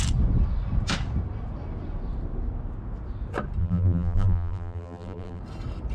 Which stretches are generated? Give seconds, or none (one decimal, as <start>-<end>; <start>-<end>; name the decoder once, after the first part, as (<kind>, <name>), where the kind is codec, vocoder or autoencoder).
3.6-5.4 (vocoder, BigVGAN v2)